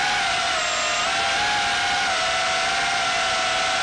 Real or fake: real